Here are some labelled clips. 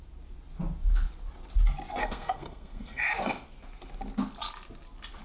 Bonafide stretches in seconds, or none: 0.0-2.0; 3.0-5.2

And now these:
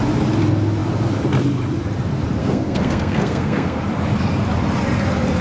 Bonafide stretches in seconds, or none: 0.0-2.4; 3.8-5.4

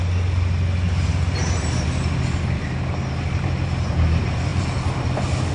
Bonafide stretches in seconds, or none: 0.0-5.5

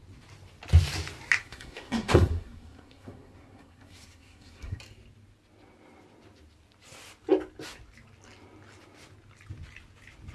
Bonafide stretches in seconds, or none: 0.0-1.4; 4.8-10.3

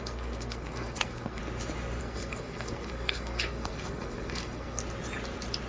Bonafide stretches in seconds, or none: 1.4-2.0; 4.8-5.7